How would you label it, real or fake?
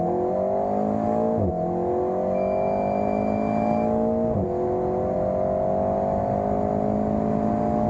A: real